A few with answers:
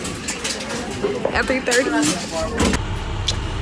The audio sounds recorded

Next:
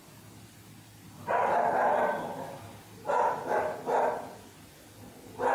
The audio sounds recorded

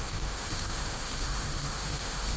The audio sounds remade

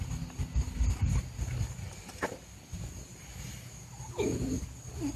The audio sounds recorded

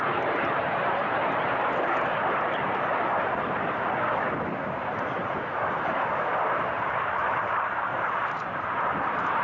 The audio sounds recorded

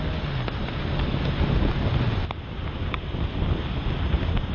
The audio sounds recorded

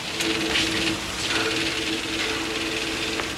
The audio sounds recorded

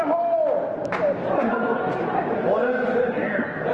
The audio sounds recorded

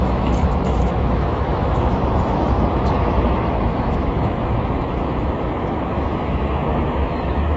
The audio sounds remade